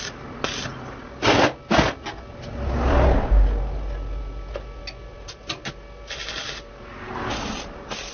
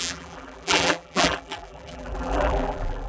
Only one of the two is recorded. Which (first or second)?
first